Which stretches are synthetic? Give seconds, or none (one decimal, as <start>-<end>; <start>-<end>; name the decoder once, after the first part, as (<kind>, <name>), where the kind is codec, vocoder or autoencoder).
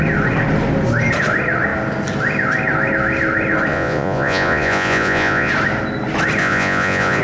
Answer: 3.7-5.5 (vocoder, Vocos); 6.4-7.2